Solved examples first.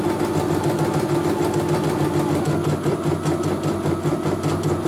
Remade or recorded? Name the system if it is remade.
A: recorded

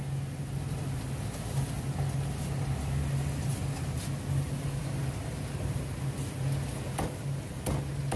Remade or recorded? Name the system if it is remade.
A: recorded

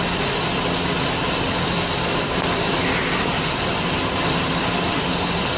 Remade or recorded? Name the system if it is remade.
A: recorded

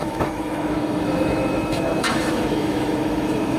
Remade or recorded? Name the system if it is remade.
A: remade, autoencoder, DAC-VAE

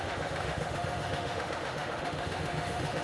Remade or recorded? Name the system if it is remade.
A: remade, autoencoder, DAC-VAE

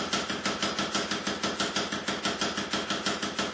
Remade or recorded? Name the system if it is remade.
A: recorded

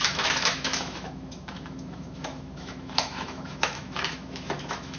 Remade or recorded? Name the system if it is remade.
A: remade, autoencoder, DAC-VAE